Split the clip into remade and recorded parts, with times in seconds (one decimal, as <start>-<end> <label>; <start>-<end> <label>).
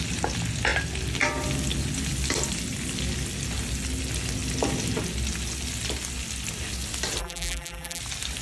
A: 0.0-7.2 recorded; 7.2-8.0 remade; 8.0-8.4 recorded